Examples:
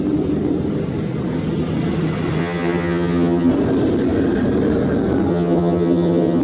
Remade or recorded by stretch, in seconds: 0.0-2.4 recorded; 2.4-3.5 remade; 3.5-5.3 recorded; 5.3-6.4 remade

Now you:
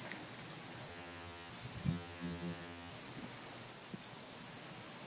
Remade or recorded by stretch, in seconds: 0.0-0.9 recorded; 0.9-1.5 remade; 1.5-1.9 recorded; 1.9-2.9 remade; 2.9-5.1 recorded

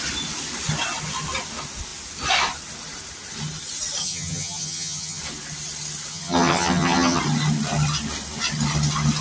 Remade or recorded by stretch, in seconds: 0.0-4.0 recorded; 4.0-5.2 remade; 5.2-6.1 recorded; 6.1-7.2 remade; 7.2-9.2 recorded

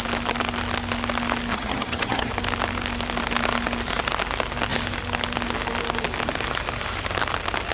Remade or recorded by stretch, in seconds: 0.0-1.5 recorded; 1.5-2.3 remade; 2.3-7.7 recorded

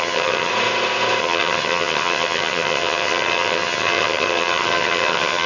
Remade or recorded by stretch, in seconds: 0.0-0.5 remade; 0.5-1.2 recorded; 1.2-5.5 remade

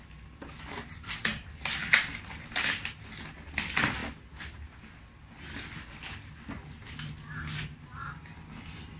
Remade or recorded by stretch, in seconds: 0.0-9.0 recorded